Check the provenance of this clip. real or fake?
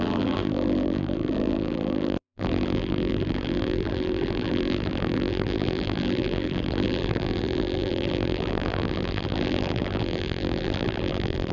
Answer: fake